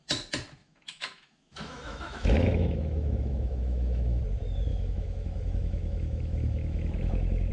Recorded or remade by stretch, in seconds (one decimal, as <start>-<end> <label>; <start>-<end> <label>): 0.0-0.6 recorded; 0.6-4.2 remade; 4.2-4.7 recorded; 4.7-7.5 remade